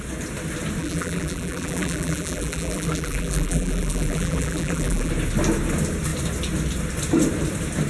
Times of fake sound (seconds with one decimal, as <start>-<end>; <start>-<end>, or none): 0.8-5.1